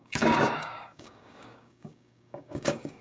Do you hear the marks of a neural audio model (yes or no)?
yes